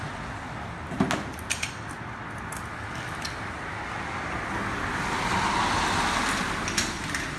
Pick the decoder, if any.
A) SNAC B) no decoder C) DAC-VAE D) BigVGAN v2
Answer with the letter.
B